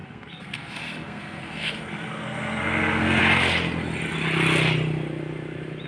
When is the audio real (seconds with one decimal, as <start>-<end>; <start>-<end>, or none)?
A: 3.2-5.9